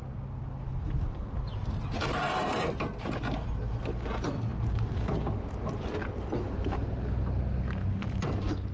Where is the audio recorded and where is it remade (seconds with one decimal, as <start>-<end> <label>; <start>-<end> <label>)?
0.0-8.7 recorded